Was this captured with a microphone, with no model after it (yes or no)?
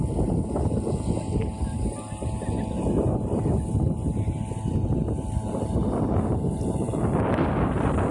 yes